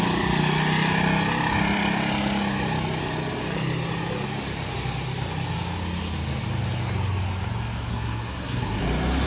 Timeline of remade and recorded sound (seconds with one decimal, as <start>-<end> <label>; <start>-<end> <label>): 0.0-7.9 recorded; 7.9-8.8 remade; 8.8-9.3 recorded